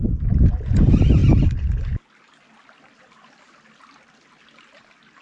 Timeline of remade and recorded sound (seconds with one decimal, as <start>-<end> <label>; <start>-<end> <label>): 0.0-5.2 recorded